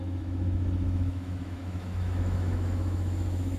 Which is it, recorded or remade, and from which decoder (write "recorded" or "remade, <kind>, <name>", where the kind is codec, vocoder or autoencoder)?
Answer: remade, autoencoder, DAC-VAE